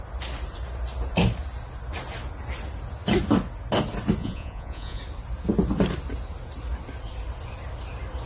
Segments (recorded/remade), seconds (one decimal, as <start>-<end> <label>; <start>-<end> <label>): 0.0-4.2 recorded; 4.2-5.0 remade; 5.0-8.3 recorded